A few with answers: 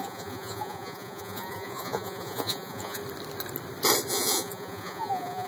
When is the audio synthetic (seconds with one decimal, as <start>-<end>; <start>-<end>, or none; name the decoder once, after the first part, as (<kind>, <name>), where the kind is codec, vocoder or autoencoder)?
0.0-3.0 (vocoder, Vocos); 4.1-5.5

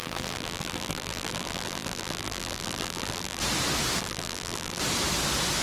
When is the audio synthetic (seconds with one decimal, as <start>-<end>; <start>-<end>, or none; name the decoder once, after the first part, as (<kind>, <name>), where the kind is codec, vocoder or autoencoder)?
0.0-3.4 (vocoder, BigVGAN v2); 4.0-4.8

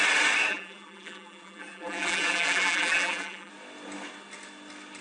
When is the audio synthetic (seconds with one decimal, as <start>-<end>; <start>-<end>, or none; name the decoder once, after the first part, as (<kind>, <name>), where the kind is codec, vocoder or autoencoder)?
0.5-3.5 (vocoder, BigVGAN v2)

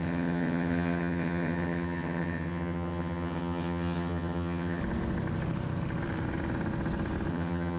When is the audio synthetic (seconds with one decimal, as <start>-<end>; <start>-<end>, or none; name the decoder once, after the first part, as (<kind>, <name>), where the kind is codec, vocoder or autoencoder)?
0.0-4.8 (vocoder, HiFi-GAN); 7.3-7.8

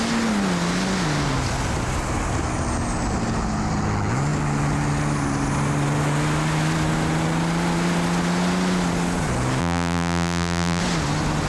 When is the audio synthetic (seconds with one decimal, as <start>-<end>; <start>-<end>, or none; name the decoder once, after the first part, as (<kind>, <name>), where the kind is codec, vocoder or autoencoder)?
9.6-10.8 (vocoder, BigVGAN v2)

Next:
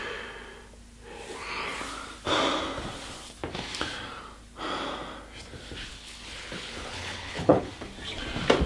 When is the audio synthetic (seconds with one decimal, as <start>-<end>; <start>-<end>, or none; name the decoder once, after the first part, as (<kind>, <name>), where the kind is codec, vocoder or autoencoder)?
5.9-7.7 (codec, HILCodec)